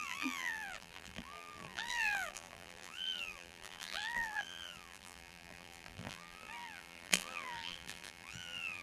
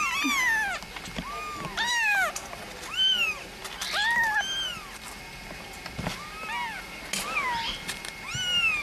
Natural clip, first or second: second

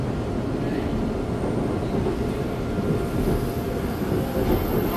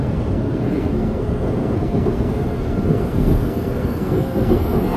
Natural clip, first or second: first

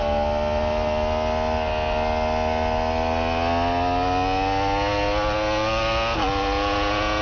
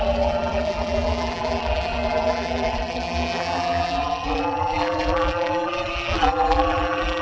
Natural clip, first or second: first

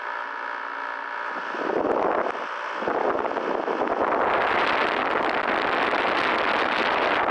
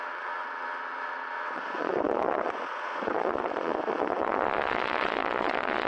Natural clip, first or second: first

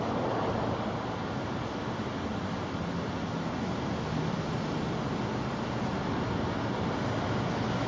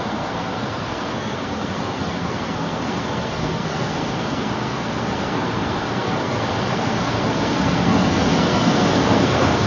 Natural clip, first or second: first